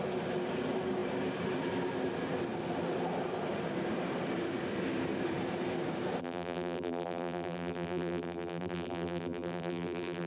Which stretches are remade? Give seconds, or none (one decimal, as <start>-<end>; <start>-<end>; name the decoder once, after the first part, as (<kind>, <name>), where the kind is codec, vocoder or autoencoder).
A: 6.2-10.3 (vocoder, BigVGAN v2)